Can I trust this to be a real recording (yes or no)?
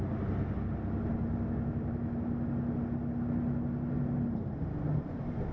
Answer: yes